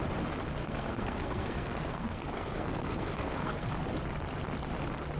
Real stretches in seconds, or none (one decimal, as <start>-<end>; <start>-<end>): 0.0-0.6; 3.7-5.2